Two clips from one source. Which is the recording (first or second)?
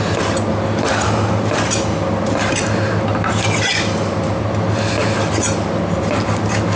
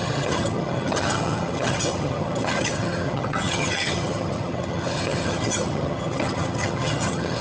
first